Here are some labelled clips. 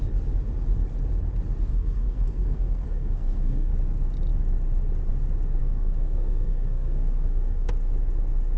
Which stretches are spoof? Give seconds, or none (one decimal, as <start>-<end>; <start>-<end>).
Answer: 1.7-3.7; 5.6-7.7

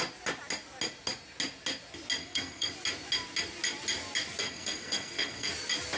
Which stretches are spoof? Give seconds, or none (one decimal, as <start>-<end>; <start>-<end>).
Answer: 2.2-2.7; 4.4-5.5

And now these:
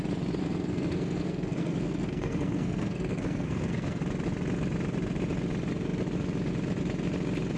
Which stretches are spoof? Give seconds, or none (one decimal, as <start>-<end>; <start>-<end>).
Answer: 0.4-4.0

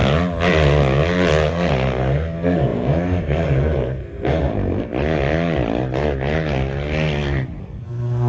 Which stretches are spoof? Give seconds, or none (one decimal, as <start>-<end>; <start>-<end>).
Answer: 1.5-4.9; 7.6-8.3

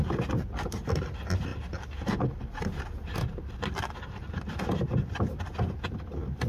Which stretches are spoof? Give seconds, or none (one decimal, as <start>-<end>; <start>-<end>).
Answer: none

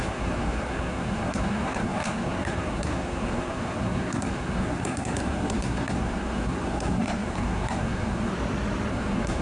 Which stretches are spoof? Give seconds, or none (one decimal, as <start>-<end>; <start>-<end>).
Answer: 0.0-8.3; 8.9-9.4

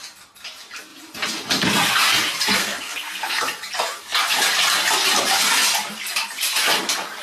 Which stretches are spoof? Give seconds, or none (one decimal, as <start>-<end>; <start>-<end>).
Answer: 2.6-3.4